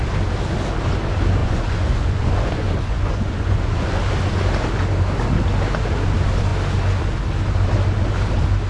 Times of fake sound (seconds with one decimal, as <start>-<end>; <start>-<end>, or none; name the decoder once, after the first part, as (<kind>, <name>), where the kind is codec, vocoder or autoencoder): 1.4-4.0 (vocoder, Vocos)